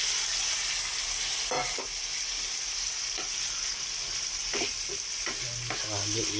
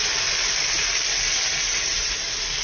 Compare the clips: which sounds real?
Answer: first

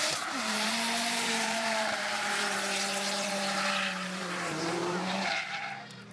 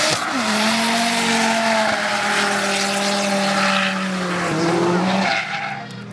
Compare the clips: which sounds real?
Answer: second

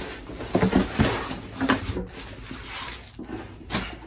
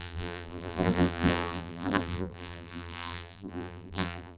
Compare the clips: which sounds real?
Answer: first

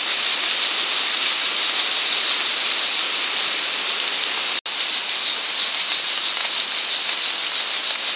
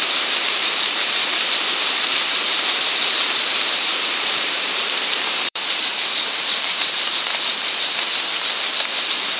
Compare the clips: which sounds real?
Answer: first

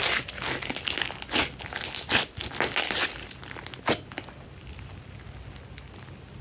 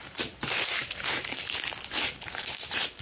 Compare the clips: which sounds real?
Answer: first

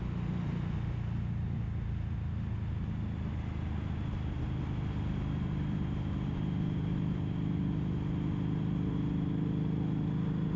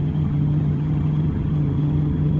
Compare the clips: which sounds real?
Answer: first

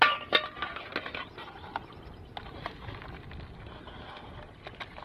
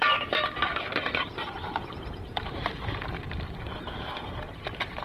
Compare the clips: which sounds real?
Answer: first